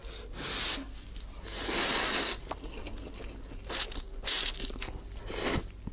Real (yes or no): yes